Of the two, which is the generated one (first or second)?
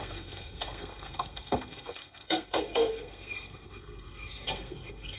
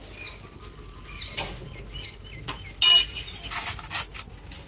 first